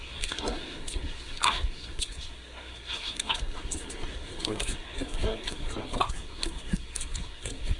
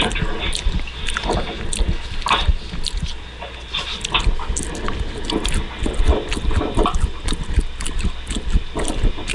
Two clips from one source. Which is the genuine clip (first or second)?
second